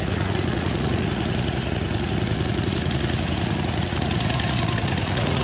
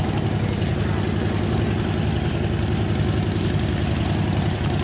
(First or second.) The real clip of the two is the second